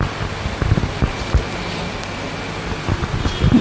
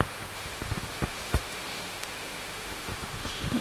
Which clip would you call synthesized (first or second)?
second